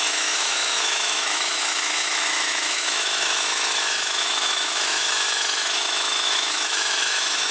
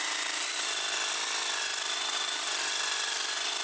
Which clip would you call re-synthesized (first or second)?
first